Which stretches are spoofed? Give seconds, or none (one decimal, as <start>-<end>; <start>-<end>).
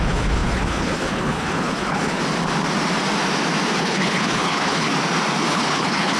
0.0-2.2; 3.8-4.9; 5.5-6.2